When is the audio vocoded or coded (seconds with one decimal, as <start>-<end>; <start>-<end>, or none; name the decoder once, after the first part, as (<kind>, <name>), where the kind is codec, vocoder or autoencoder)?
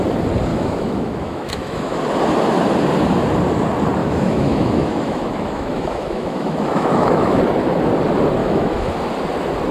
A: 0.5-2.0 (autoencoder, DAC-VAE); 4.0-7.4; 8.4-8.9